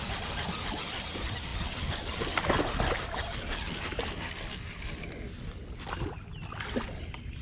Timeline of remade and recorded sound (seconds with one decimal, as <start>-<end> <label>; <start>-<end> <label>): 0.0-7.4 recorded